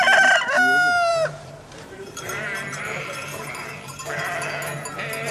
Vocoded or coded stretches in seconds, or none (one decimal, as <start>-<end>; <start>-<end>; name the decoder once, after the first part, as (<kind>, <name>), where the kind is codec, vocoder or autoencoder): 1.1-4.3 (vocoder, BigVGAN v2)